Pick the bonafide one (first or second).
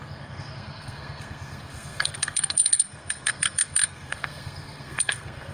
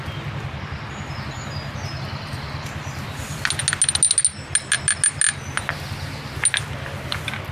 second